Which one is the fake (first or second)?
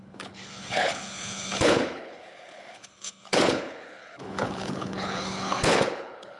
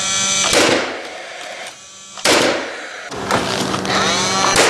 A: first